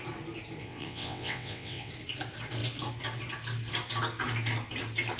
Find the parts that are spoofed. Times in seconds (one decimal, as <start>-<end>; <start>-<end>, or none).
0.6-1.9